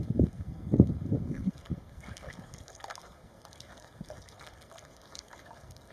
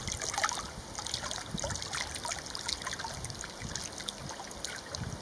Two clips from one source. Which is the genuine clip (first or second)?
second